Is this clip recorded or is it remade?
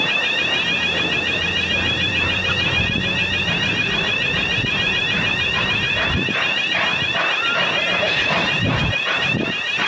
remade